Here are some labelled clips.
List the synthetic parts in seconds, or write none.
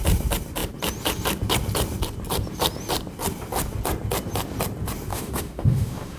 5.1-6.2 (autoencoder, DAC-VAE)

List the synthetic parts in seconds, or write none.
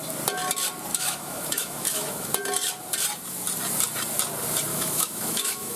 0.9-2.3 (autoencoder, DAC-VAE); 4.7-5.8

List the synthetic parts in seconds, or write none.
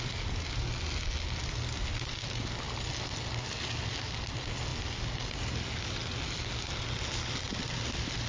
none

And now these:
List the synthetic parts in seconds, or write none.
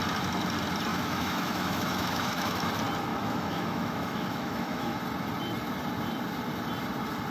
0.9-2.7 (autoencoder, DAC-VAE); 3.1-5.0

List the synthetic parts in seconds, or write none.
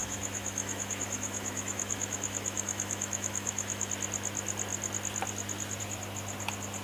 0.0-3.9 (autoencoder, DAC-VAE)